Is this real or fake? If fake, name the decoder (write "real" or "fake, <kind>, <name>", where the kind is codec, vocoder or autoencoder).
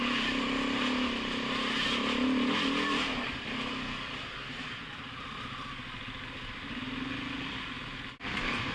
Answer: real